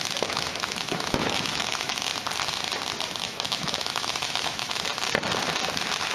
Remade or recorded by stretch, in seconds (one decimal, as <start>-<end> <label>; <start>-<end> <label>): 0.0-2.1 remade; 2.1-3.2 recorded; 3.2-4.9 remade; 4.9-6.1 recorded